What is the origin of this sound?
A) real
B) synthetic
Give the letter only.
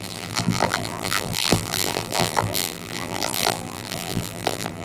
B